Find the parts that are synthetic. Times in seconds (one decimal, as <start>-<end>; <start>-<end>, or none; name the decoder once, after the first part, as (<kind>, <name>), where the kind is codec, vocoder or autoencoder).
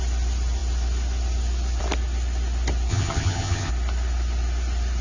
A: 2.9-3.7 (vocoder, HiFi-GAN)